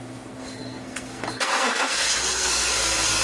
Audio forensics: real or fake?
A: fake